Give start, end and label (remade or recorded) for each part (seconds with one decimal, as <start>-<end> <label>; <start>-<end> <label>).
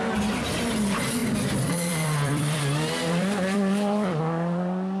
0.0-1.2 recorded; 1.2-4.2 remade; 4.2-5.0 recorded